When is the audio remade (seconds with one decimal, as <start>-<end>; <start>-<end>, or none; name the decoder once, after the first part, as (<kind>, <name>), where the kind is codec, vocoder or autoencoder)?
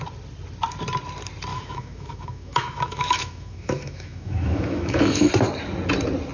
1.5-5.3 (autoencoder, DAC-VAE)